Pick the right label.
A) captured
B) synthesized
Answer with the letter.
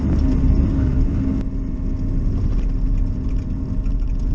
A